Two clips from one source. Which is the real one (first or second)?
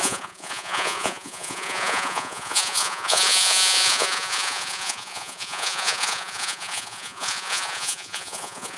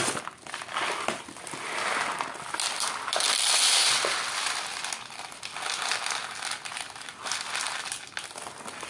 second